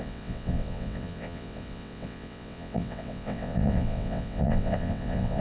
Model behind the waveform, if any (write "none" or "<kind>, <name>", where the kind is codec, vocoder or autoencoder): vocoder, WaveNeXt